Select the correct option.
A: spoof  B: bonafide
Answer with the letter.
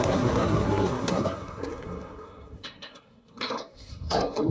A